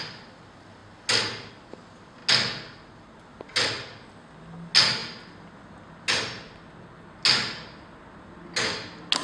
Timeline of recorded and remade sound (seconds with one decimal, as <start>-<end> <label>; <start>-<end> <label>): 0.0-9.2 recorded